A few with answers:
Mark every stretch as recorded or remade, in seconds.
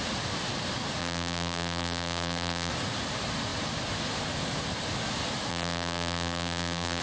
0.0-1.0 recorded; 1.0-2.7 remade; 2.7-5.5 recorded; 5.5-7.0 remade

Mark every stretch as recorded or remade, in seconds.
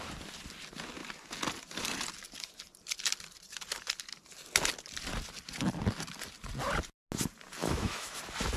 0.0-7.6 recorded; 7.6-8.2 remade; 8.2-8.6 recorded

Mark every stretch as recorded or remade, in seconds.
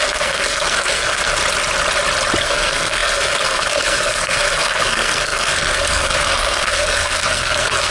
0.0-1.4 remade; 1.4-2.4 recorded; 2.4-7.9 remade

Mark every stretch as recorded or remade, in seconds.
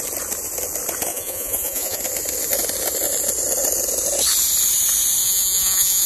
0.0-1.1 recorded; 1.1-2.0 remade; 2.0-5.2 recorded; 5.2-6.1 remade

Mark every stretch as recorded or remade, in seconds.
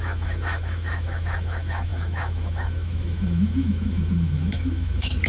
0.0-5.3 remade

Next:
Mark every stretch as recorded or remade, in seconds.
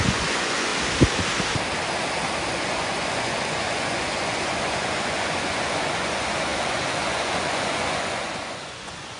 0.0-0.7 remade; 0.7-2.5 recorded; 2.5-9.2 remade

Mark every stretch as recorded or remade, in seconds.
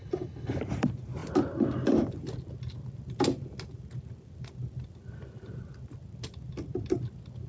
0.0-0.6 remade; 0.6-7.5 recorded